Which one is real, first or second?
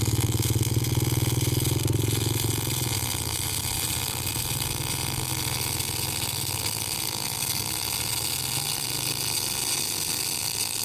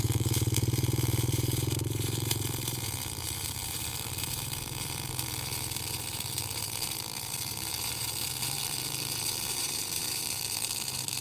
first